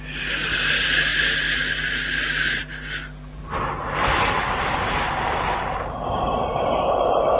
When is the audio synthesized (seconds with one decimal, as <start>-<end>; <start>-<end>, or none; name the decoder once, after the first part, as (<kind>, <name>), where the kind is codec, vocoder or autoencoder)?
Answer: none